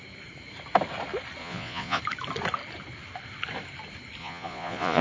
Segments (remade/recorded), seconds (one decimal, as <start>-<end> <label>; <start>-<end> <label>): 0.0-1.4 recorded; 1.4-2.0 remade; 2.0-4.2 recorded; 4.2-5.0 remade